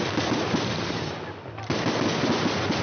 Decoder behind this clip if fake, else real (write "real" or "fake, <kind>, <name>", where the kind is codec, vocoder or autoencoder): real